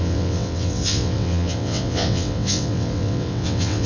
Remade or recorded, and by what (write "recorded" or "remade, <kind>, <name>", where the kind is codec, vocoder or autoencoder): remade, vocoder, WaveNeXt